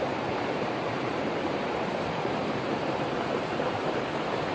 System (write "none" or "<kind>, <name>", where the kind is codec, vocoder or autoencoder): vocoder, BigVGAN v2